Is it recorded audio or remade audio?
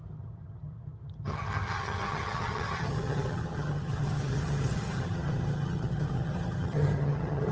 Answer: remade